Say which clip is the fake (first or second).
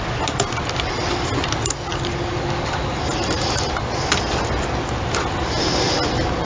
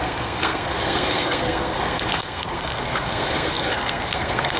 second